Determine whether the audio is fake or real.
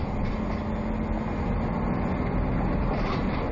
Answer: real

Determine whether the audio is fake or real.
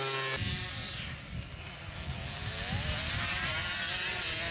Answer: real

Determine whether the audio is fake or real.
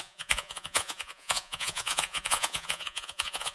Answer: fake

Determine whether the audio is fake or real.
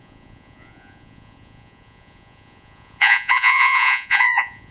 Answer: fake